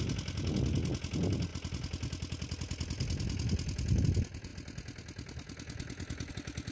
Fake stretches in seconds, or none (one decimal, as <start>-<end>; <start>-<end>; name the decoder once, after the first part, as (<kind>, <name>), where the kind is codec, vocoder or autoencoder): none